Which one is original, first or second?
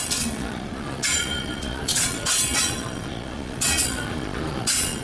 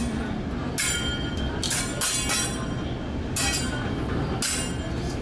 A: second